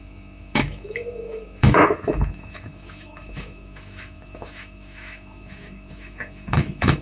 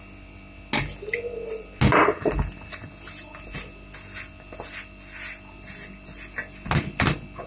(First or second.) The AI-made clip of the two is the first